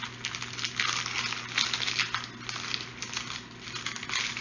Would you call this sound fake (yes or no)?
no